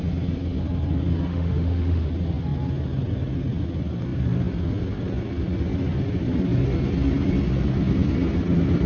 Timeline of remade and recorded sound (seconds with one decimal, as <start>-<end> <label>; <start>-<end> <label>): 0.0-1.3 recorded; 1.3-2.1 remade; 2.1-8.9 recorded